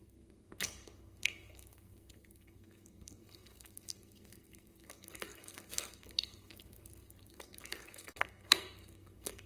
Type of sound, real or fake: fake